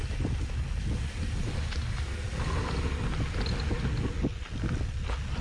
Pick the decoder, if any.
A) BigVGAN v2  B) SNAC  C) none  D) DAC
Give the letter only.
C